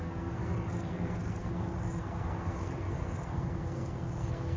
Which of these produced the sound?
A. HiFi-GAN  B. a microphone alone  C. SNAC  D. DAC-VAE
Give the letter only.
C